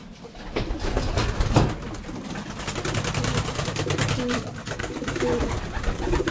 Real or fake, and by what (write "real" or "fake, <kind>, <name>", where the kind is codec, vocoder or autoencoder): real